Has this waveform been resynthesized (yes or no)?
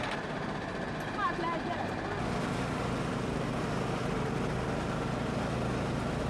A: no